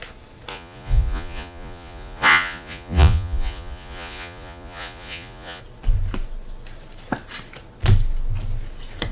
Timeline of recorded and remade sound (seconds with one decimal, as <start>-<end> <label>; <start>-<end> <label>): 0.0-0.5 recorded; 0.5-5.6 remade; 5.6-9.1 recorded